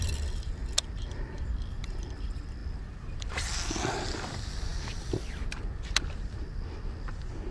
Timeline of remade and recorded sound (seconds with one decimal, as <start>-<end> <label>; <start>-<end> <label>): 0.0-0.6 remade; 0.6-1.8 recorded; 1.8-4.7 remade; 4.7-5.4 recorded; 5.4-7.5 remade